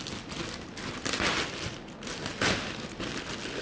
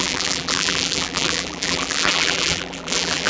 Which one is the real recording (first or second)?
first